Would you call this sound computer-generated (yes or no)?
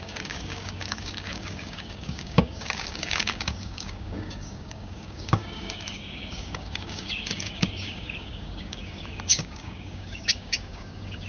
yes